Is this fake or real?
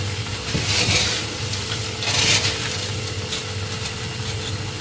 real